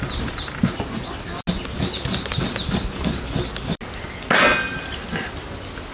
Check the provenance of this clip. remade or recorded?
recorded